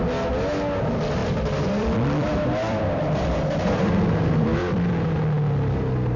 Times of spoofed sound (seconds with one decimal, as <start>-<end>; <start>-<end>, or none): 1.2-4.9